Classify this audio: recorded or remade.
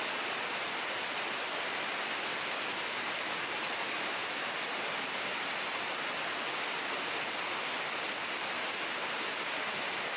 recorded